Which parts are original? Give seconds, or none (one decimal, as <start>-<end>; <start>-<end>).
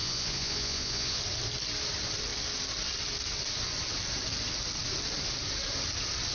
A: 1.2-6.3